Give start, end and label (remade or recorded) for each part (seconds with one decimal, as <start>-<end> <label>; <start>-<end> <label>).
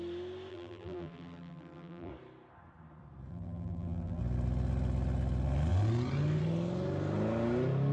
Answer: 0.0-0.5 recorded; 0.5-2.1 remade; 2.1-3.3 recorded; 3.3-4.2 remade; 4.2-7.9 recorded